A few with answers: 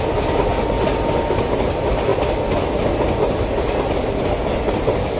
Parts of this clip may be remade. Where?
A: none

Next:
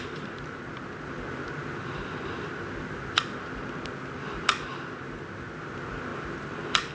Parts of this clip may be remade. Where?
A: none

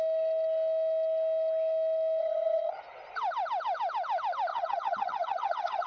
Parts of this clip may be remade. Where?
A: 2.2-2.8 (vocoder, HiFi-GAN); 4.5-5.9

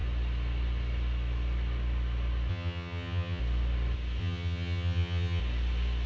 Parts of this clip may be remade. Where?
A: 2.5-3.4 (vocoder, HiFi-GAN); 4.2-5.4